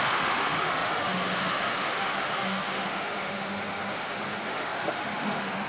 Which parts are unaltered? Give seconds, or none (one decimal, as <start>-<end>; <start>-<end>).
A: none